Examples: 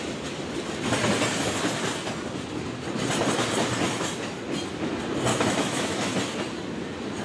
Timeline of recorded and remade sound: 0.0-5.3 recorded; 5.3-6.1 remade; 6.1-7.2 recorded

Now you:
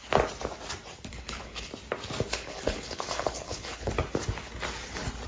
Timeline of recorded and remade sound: 0.0-1.1 recorded; 1.1-1.7 remade; 1.7-2.3 recorded; 2.3-3.9 remade; 3.9-5.3 recorded

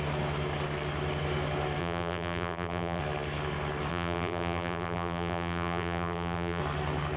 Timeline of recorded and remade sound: 0.0-1.8 recorded; 1.8-3.0 remade; 3.0-3.9 recorded; 3.9-6.6 remade; 6.6-7.2 recorded

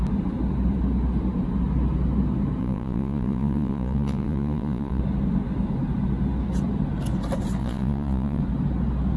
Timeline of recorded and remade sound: 0.0-2.6 recorded; 2.6-5.0 remade; 5.0-7.6 recorded; 7.6-8.4 remade; 8.4-9.2 recorded

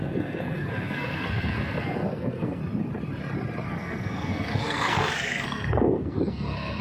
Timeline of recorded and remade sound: 0.0-2.6 remade; 2.6-3.7 recorded; 3.7-6.8 remade

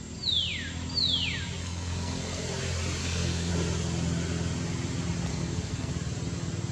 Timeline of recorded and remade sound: 0.0-1.6 recorded; 1.6-2.4 remade; 2.4-3.0 recorded; 3.0-3.5 remade; 3.5-5.3 recorded; 5.3-5.9 remade; 5.9-6.7 recorded

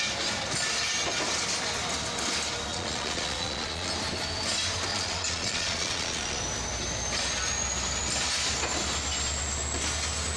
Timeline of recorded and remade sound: 0.0-2.7 recorded; 2.7-3.9 remade; 3.9-4.9 recorded; 4.9-6.4 remade; 6.4-10.4 recorded